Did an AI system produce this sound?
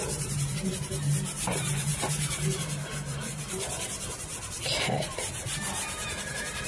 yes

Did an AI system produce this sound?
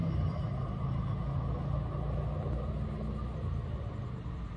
no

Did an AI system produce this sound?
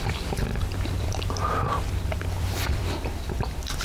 yes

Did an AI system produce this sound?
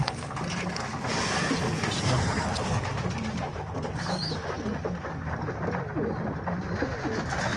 no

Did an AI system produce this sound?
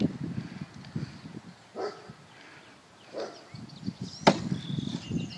no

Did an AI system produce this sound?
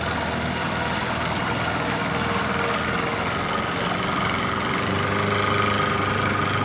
no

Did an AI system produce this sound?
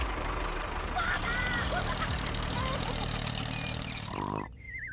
yes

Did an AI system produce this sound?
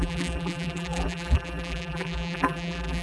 yes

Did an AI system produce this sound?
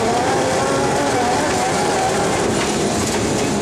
yes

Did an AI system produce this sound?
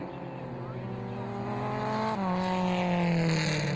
no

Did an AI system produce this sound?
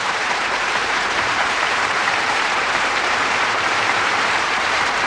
yes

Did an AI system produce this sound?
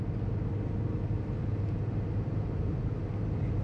no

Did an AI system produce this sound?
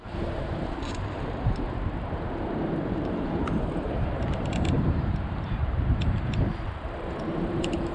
yes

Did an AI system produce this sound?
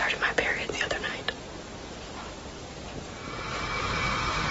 no